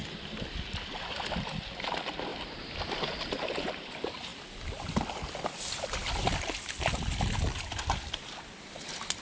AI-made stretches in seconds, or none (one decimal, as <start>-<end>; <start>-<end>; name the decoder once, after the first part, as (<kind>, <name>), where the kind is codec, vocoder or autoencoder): none